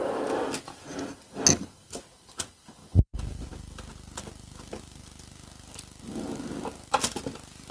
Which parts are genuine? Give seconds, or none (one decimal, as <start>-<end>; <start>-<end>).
0.0-7.7